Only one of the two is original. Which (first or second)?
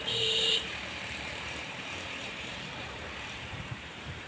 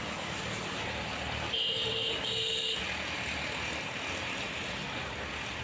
second